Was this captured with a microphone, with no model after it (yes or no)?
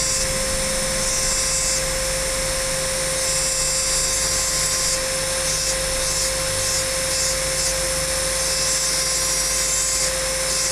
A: yes